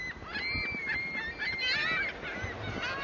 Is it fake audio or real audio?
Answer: real